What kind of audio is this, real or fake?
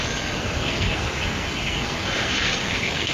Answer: fake